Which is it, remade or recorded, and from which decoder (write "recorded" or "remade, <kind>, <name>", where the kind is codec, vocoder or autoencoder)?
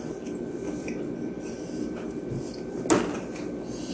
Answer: recorded